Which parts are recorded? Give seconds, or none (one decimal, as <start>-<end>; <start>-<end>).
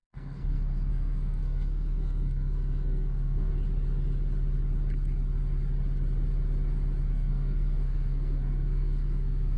3.5-7.1